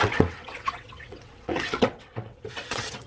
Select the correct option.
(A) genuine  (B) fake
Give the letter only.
B